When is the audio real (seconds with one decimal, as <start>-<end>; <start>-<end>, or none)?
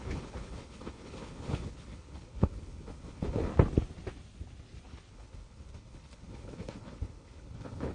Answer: 3.5-5.1